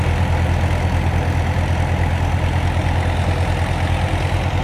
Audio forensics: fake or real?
real